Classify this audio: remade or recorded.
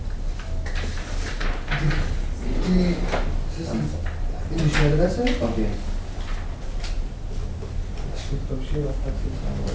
recorded